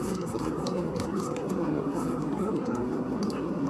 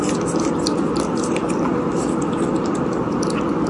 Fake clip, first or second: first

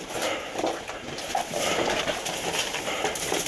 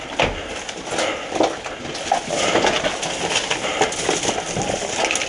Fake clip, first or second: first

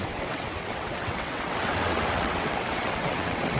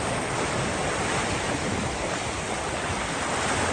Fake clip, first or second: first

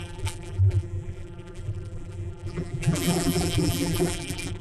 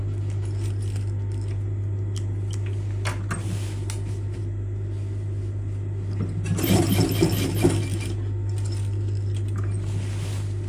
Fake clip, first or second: first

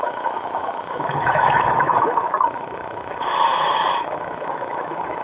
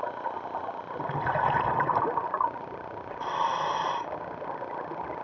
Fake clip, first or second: first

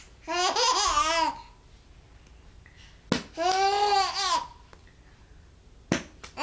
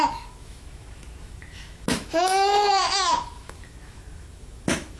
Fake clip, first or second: second